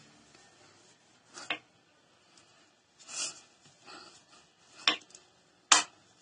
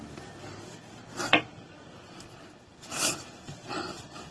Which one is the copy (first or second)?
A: second